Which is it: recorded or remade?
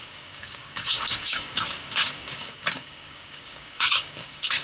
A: remade